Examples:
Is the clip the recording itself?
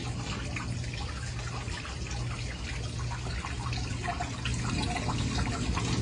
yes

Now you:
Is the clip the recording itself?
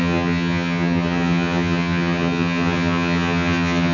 no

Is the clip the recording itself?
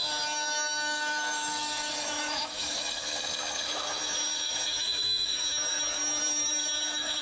no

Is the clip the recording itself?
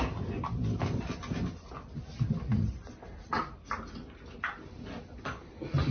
yes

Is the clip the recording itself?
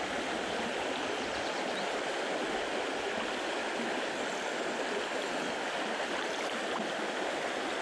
yes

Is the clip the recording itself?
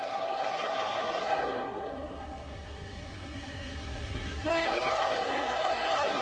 no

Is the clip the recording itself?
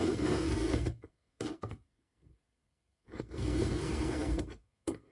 no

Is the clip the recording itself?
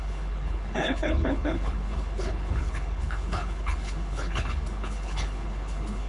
no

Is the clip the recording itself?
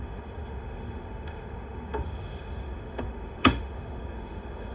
no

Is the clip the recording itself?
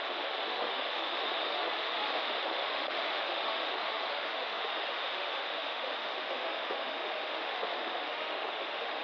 no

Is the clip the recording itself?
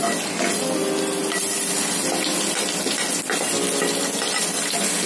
yes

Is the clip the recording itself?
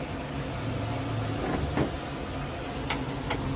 yes